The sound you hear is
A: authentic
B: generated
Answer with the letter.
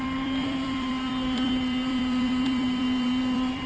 B